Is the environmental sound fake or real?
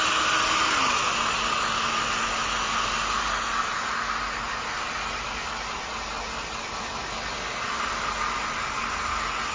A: real